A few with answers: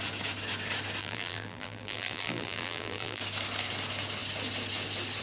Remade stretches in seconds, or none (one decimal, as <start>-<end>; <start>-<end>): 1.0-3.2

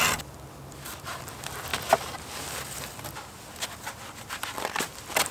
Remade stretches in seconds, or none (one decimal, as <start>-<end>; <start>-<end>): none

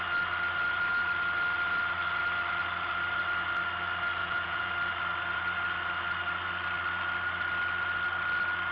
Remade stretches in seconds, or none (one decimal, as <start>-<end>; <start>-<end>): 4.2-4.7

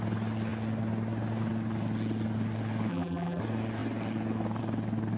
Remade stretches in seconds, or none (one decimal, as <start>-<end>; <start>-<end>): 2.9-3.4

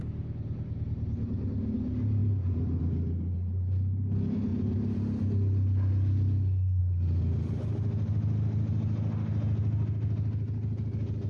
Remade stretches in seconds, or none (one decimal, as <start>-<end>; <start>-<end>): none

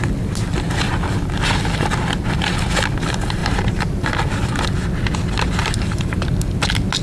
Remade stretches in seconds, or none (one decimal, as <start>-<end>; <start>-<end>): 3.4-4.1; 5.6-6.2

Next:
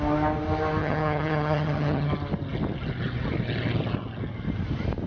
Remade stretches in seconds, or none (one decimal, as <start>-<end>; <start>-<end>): 0.8-2.1